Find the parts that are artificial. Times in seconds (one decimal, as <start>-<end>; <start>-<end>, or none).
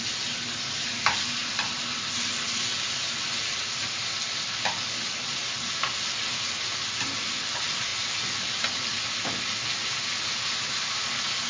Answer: none